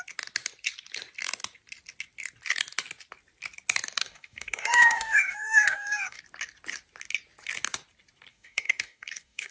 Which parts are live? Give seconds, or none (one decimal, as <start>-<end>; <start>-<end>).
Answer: 0.0-4.0; 6.2-8.3